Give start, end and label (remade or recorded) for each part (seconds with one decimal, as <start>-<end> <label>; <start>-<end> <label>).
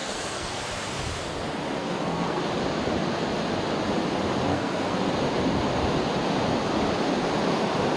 0.0-0.6 remade; 0.6-1.8 recorded; 1.8-2.4 remade; 2.4-4.5 recorded; 4.5-5.1 remade; 5.1-8.0 recorded